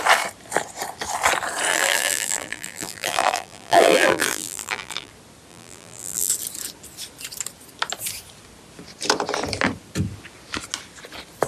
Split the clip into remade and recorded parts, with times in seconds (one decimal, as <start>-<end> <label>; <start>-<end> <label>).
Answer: 0.0-1.7 recorded; 1.7-5.1 remade; 5.1-5.5 recorded; 5.5-6.3 remade; 6.3-11.5 recorded